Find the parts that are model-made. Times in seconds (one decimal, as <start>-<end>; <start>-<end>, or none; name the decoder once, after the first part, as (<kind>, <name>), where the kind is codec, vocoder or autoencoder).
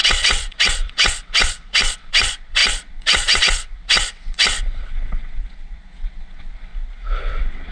0.0-6.7 (vocoder, WaveNeXt); 7.2-7.7